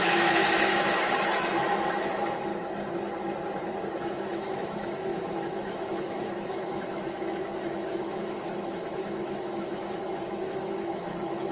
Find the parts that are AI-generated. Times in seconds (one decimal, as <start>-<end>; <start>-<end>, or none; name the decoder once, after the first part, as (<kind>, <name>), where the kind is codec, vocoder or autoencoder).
0.0-2.5 (autoencoder, DAC-VAE); 4.0-11.5